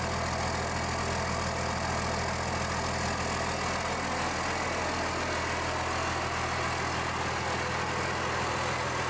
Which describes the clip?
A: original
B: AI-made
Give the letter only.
A